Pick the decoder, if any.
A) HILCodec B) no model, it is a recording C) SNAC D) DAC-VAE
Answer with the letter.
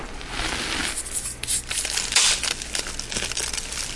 B